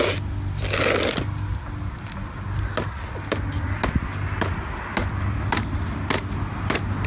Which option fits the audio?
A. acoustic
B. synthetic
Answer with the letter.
A